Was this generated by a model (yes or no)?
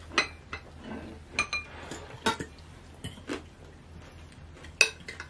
no